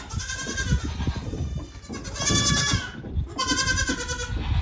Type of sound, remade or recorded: recorded